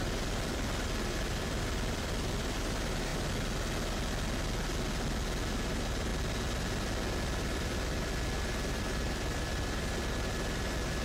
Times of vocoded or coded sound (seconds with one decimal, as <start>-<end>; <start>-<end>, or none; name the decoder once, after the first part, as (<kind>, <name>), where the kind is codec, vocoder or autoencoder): 0.0-3.1 (vocoder, BigVGAN v2); 5.5-6.1; 7.4-11.0